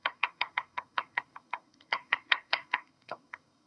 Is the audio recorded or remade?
remade